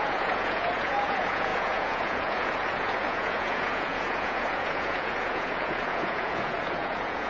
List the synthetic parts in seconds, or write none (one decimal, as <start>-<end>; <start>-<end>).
0.0-7.3